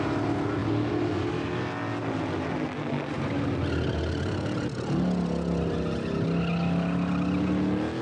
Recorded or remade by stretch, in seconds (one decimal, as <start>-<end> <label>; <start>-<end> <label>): 0.0-8.0 recorded